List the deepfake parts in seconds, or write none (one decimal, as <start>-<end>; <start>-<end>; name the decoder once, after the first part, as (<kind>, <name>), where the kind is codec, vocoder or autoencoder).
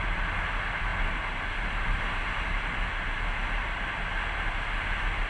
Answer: none